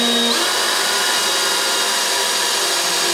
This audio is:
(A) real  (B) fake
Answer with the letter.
A